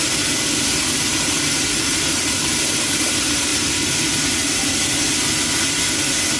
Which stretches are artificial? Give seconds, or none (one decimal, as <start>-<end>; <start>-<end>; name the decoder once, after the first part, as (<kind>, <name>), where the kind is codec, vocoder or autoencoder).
none